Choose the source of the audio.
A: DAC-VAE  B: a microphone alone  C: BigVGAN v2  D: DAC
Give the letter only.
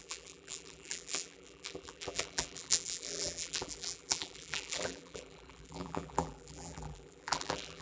C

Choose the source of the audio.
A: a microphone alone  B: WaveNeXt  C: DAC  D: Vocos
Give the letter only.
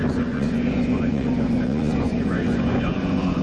D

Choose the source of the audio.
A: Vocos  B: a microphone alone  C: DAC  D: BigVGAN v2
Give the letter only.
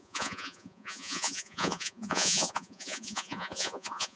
A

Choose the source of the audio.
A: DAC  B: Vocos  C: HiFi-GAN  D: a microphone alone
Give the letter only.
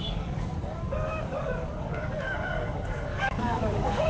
A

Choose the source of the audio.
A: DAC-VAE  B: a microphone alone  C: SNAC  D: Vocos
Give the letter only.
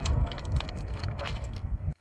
C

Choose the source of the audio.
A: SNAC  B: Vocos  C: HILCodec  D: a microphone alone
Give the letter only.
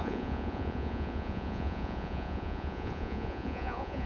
B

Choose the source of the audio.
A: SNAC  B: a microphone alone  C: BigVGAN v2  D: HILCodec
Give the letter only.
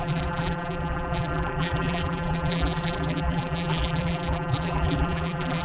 C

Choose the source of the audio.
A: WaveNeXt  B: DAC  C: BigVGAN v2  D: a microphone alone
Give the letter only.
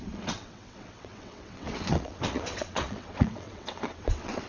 A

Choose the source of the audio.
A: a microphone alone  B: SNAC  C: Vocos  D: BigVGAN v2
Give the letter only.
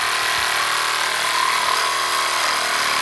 A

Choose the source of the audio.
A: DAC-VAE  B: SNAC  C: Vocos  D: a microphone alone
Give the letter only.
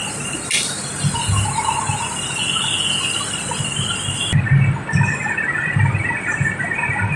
D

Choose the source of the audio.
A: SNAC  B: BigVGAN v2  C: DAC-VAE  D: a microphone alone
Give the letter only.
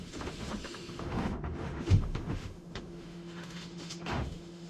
C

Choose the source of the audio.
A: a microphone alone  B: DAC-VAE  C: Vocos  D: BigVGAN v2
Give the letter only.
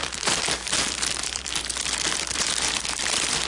D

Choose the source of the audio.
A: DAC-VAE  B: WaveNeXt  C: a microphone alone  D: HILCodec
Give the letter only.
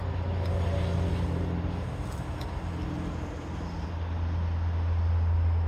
C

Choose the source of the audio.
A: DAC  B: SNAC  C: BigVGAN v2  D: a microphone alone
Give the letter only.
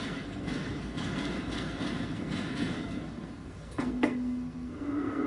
B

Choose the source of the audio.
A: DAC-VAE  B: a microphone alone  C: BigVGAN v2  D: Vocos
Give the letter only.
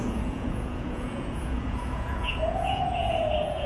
D